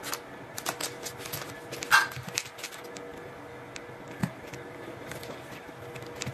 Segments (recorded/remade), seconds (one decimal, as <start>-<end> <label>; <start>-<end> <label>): 0.0-3.1 recorded; 3.1-3.6 remade; 3.6-4.2 recorded; 4.2-5.7 remade; 5.7-6.3 recorded